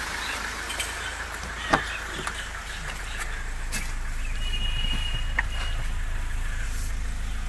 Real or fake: fake